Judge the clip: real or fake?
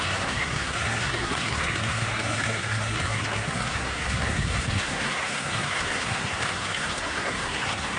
fake